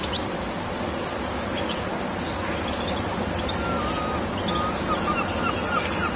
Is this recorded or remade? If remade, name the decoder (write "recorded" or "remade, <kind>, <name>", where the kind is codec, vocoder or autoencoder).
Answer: recorded